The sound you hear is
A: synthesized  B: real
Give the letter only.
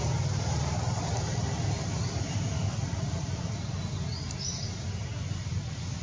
B